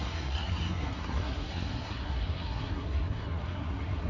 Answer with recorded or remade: remade